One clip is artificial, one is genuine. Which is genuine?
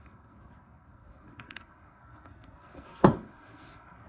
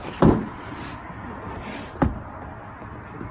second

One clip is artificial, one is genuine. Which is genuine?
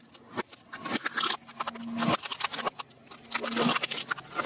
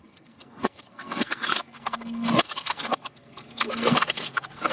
first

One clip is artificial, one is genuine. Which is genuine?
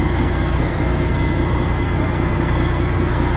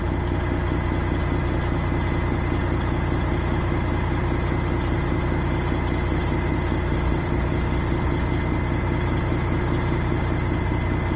second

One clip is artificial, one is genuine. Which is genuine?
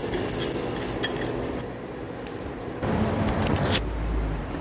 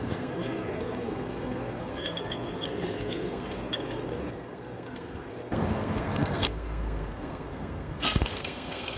first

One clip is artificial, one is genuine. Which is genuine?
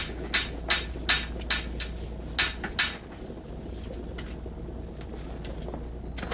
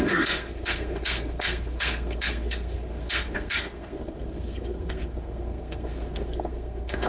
first